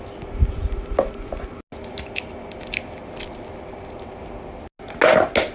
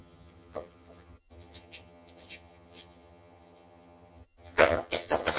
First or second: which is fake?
second